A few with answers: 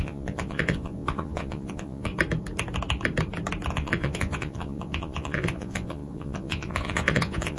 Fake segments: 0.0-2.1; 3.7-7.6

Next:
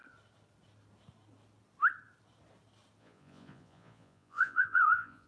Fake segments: 3.0-5.3

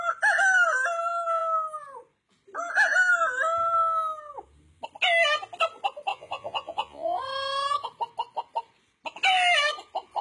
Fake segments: 6.1-7.2

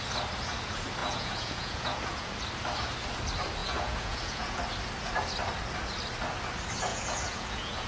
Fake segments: 1.0-2.3; 3.6-4.6; 6.9-7.9

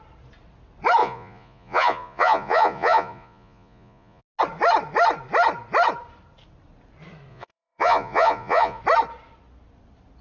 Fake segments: 1.0-4.2; 7.3-8.8